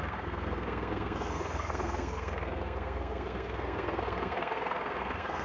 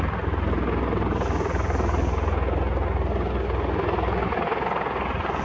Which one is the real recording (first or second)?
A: second